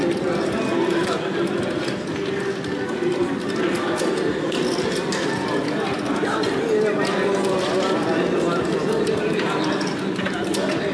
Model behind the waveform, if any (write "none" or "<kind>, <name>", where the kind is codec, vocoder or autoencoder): none